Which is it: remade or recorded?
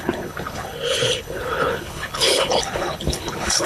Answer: remade